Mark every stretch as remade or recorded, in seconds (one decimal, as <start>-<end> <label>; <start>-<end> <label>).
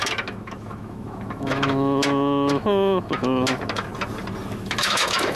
0.0-3.9 remade; 3.9-4.5 recorded; 4.5-5.4 remade